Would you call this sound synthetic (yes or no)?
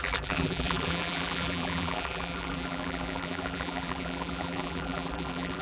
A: yes